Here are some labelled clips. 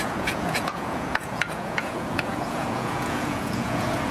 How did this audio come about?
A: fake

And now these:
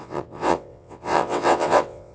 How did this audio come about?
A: fake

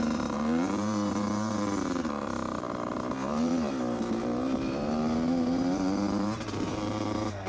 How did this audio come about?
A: fake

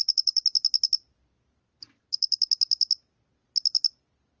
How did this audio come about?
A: real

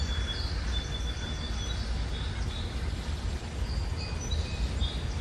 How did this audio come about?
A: real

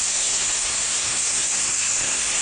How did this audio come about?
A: fake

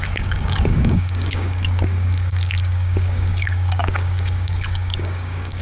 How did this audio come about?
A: fake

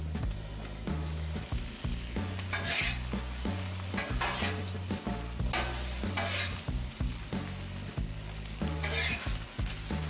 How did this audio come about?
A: real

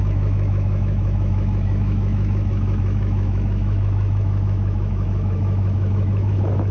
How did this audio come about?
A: fake